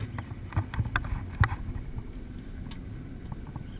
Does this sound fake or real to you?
real